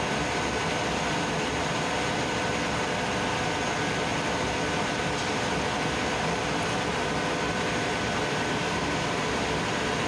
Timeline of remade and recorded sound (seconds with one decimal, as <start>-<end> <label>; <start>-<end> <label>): 0.0-10.1 recorded

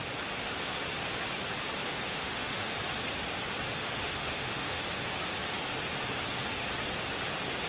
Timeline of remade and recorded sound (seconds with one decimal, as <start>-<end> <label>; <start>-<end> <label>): 0.0-2.1 recorded; 2.1-2.7 remade; 2.7-3.8 recorded; 3.8-4.8 remade; 4.8-7.7 recorded

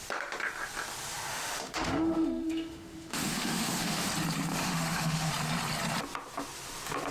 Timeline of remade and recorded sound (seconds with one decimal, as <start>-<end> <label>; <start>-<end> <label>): 0.0-1.3 recorded; 1.3-4.1 remade; 4.1-4.5 recorded; 4.5-5.3 remade; 5.3-7.1 recorded

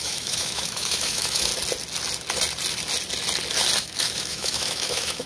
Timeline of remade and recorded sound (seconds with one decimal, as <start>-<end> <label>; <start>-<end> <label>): 0.0-1.5 remade; 1.5-3.8 recorded; 3.8-5.3 remade

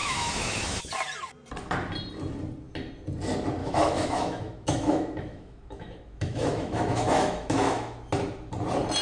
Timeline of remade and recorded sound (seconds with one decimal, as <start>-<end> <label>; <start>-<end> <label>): 0.0-0.8 remade; 0.8-3.6 recorded; 3.6-8.1 remade; 8.1-9.0 recorded

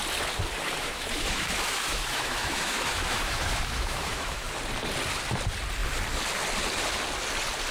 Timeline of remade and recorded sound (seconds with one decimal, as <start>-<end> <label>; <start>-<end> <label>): 0.0-0.8 recorded; 0.8-4.5 remade; 4.5-7.7 recorded

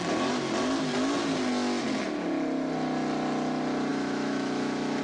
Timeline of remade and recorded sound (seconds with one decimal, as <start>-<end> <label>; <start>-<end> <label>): 0.0-3.9 recorded; 3.9-5.0 remade